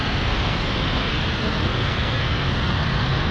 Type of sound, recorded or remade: remade